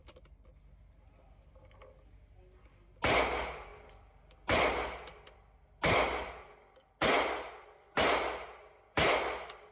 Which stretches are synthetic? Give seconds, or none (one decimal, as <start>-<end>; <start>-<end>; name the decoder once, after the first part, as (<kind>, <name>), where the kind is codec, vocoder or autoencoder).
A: none